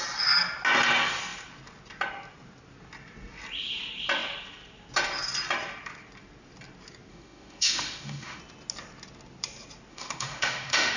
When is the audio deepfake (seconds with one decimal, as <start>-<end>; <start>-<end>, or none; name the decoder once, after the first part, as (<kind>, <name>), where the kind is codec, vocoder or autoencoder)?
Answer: 7.1-8.4 (autoencoder, DAC-VAE); 9.9-11.0